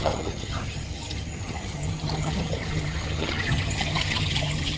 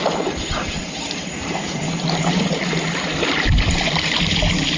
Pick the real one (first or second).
second